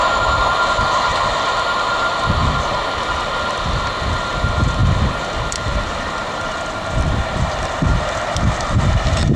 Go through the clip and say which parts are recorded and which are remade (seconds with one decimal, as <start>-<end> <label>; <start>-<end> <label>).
0.0-1.1 recorded; 1.1-4.0 remade; 4.0-4.8 recorded; 4.8-8.9 remade; 8.9-9.4 recorded